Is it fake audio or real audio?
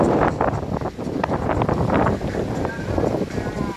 real